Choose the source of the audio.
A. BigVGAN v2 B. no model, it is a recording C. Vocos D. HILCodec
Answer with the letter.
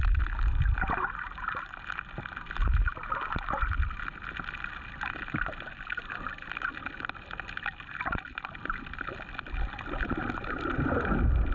B